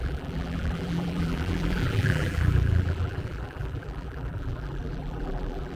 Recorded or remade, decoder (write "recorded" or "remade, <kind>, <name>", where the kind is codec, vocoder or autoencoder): remade, vocoder, BigVGAN v2